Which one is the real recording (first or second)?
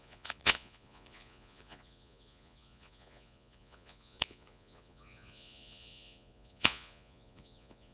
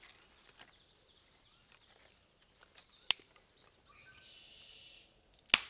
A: second